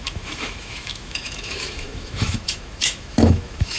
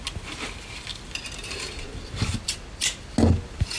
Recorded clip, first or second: second